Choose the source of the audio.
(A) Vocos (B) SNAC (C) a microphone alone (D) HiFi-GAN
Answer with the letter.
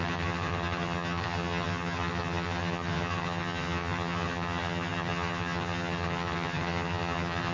D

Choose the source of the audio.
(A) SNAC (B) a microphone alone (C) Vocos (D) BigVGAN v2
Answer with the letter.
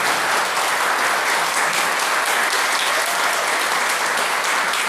B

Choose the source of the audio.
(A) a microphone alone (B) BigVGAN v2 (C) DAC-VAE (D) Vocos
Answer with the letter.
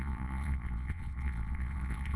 D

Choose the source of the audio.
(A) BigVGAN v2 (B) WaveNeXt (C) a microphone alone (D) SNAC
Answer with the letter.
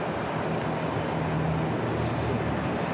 C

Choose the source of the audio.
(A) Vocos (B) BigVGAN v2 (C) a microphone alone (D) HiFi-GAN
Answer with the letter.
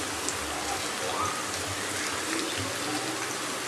C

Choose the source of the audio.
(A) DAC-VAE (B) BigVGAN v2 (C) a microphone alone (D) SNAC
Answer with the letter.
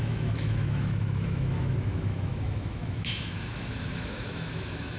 A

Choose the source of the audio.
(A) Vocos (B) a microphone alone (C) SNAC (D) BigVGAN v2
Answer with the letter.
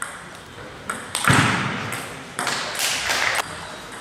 D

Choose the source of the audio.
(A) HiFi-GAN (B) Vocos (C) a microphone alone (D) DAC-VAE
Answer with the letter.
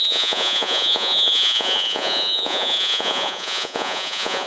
B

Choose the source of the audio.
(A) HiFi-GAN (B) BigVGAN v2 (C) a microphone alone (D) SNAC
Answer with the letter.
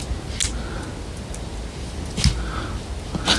C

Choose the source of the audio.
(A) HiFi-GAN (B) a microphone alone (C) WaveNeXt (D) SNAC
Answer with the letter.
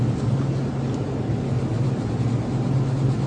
B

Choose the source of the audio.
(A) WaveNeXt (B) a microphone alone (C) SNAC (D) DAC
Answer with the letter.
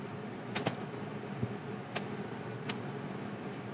B